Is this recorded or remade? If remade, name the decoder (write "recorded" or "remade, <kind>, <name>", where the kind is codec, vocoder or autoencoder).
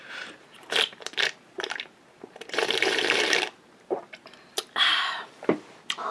remade, vocoder, BigVGAN v2